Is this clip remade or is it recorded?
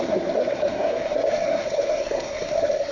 remade